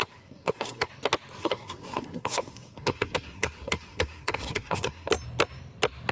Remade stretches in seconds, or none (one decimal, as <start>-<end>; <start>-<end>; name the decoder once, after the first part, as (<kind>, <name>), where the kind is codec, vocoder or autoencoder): 0.0-0.9 (codec, SNAC); 1.4-5.1